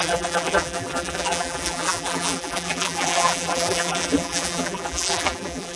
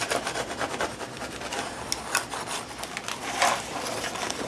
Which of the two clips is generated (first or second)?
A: first